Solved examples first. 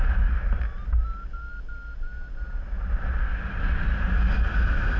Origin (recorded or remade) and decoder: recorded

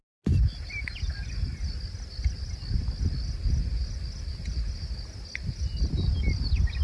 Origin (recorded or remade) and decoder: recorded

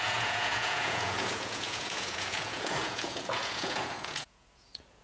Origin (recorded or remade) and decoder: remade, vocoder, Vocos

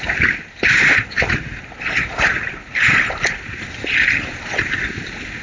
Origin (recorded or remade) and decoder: recorded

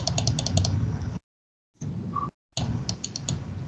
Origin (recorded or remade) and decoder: recorded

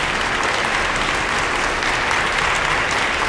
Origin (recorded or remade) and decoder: recorded